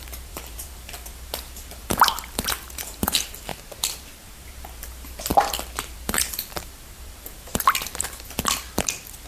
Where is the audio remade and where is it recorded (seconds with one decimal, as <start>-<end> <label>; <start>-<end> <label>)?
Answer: 0.0-3.5 remade; 3.5-4.2 recorded; 4.2-5.3 remade; 5.3-5.8 recorded; 5.8-7.5 remade; 7.5-8.7 recorded; 8.7-9.3 remade